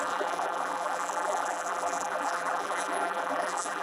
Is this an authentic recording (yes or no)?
no